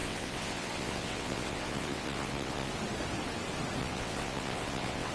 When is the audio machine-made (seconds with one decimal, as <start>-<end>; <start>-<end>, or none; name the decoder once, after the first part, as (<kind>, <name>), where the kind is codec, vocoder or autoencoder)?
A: 0.0-2.7 (vocoder, WaveNeXt); 3.8-5.1